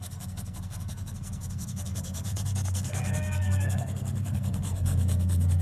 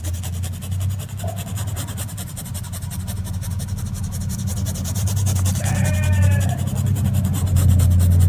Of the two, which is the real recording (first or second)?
second